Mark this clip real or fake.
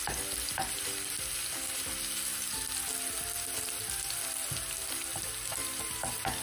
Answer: real